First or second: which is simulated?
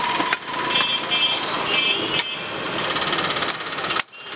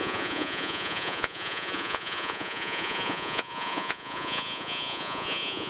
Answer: second